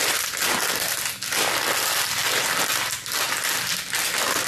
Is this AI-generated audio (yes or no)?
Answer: no